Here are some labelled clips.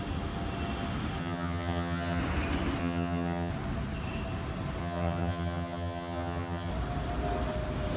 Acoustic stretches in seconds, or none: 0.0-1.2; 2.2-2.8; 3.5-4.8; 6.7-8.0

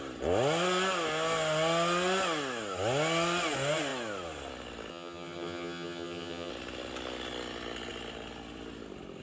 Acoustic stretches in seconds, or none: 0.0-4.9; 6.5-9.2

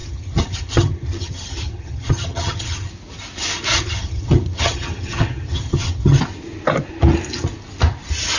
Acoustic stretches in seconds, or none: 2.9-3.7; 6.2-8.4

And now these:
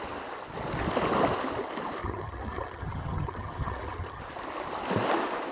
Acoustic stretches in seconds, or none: 0.0-2.0; 4.2-5.5